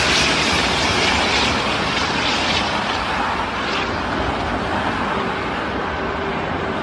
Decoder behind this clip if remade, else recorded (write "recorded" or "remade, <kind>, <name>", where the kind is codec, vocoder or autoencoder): recorded